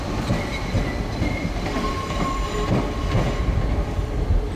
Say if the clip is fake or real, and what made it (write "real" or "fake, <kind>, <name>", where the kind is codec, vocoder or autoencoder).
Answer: real